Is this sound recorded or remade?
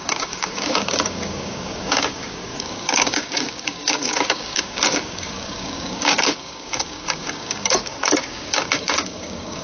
remade